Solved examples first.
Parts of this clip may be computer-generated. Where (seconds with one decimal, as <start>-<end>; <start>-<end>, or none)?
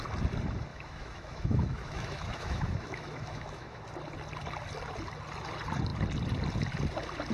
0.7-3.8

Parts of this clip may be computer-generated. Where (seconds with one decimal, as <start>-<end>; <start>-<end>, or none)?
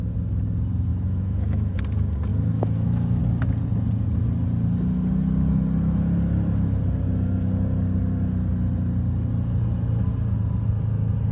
0.9-1.8; 2.3-3.2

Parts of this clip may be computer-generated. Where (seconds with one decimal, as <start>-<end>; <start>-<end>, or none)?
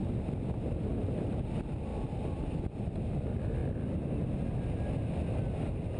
none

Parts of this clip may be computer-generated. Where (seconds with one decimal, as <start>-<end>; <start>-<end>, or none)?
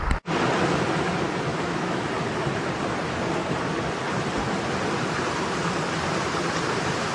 1.5-2.1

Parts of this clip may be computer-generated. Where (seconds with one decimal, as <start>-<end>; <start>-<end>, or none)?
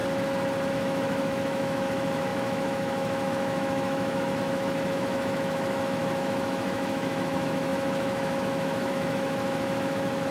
0.7-10.3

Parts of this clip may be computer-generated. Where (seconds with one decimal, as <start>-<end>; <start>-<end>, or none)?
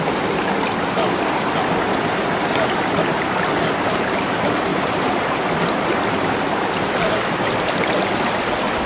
none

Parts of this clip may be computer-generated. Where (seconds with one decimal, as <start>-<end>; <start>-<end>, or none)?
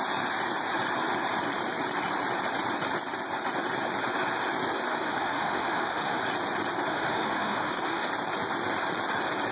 4.9-6.2; 6.9-8.1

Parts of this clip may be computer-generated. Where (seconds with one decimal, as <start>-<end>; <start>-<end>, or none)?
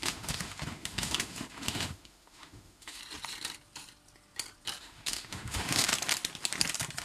0.0-3.0; 4.8-5.9